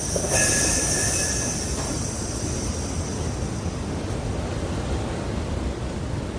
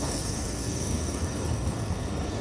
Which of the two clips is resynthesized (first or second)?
second